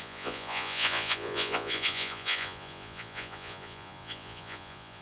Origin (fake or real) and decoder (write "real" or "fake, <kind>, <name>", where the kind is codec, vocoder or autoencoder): fake, vocoder, Vocos